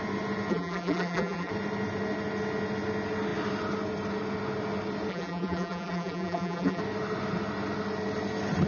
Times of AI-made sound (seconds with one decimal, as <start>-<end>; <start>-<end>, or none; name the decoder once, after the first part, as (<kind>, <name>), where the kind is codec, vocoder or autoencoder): 0.5-1.5 (vocoder, BigVGAN v2); 5.1-6.8